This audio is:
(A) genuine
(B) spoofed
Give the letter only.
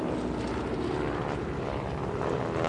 A